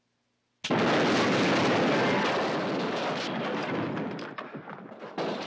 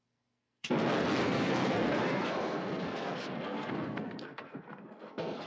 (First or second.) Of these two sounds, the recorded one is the first